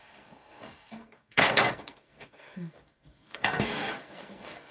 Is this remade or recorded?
remade